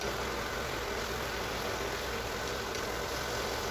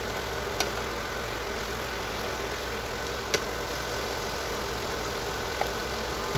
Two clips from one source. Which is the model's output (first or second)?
first